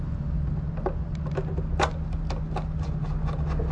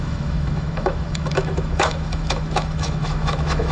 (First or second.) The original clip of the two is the first